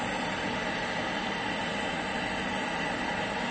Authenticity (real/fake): real